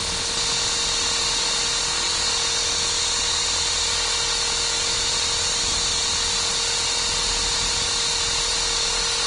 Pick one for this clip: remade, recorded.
recorded